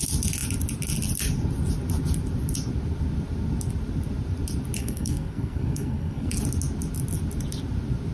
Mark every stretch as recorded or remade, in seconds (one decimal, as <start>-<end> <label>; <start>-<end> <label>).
0.0-4.8 recorded; 4.8-6.3 remade; 6.3-8.1 recorded